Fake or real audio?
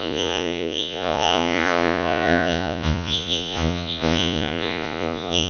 fake